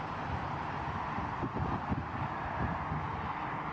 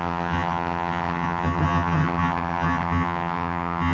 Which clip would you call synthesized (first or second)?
second